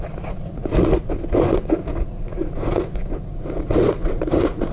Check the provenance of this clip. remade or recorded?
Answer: remade